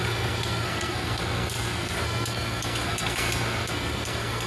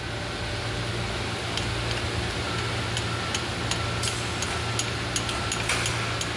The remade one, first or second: first